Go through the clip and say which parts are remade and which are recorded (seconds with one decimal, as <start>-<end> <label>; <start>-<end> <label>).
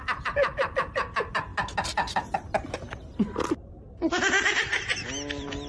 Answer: 0.0-5.7 recorded